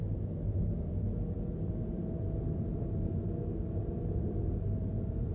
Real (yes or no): yes